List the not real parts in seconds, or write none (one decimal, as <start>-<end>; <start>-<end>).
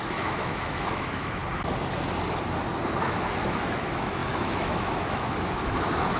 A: 0.0-1.4; 3.0-6.2